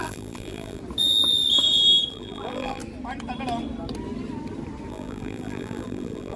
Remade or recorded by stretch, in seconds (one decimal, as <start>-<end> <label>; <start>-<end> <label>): 0.0-0.8 remade; 0.8-2.1 recorded; 2.1-2.8 remade; 2.8-4.9 recorded; 4.9-6.4 remade